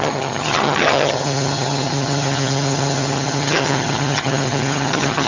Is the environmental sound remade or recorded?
remade